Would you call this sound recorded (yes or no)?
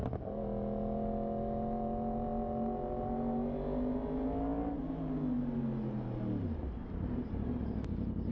yes